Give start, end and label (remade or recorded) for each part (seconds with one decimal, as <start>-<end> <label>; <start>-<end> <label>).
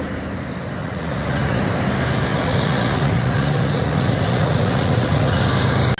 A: 0.0-0.8 recorded; 0.8-1.6 remade; 1.6-2.3 recorded; 2.3-5.4 remade; 5.4-6.0 recorded